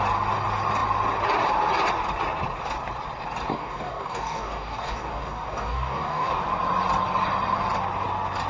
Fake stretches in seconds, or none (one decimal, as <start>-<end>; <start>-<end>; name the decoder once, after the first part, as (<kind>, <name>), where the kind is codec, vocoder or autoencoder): 3.5-6.4 (codec, DAC)